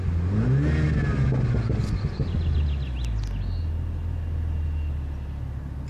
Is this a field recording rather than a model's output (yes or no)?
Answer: yes